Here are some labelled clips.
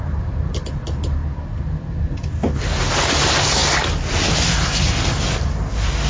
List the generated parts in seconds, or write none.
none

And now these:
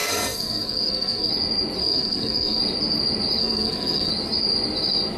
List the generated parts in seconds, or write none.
0.0-1.3 (codec, SNAC); 1.8-2.6; 3.4-4.1